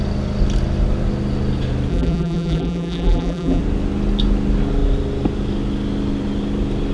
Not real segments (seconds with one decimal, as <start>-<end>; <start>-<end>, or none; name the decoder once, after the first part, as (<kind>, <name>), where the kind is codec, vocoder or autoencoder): 1.9-3.6 (vocoder, BigVGAN v2)